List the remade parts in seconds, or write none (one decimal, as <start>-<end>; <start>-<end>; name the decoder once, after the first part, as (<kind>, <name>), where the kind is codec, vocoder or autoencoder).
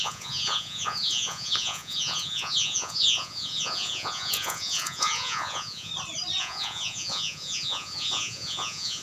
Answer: 0.0-5.9 (vocoder, Vocos); 6.4-9.0